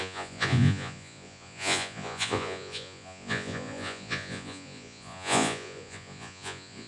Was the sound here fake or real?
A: fake